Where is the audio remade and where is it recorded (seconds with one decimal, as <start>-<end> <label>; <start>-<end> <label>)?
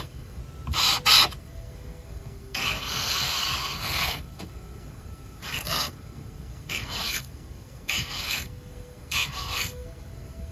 0.0-0.4 remade; 0.4-1.4 recorded; 1.4-10.5 remade